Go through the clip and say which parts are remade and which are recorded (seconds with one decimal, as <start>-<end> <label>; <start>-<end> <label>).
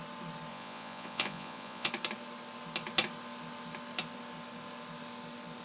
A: 0.0-0.5 recorded; 0.5-1.9 remade; 1.9-5.6 recorded